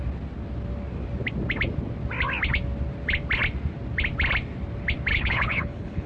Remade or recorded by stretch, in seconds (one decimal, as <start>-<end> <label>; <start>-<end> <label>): 0.0-5.1 recorded; 5.1-6.1 remade